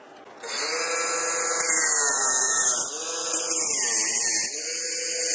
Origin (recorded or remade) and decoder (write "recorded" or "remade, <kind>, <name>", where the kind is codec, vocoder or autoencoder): recorded